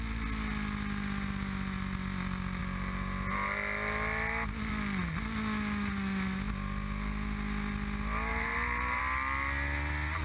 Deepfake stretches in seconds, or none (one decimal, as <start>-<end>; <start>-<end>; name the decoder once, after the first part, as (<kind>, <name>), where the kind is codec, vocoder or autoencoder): 8.3-9.0 (vocoder, BigVGAN v2)